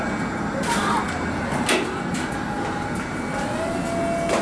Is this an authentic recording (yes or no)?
yes